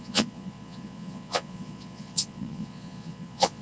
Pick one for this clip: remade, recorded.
remade